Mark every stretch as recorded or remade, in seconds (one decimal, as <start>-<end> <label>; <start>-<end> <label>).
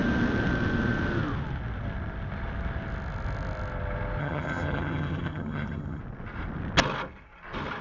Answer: 0.0-4.2 recorded; 4.2-6.0 remade; 6.0-7.8 recorded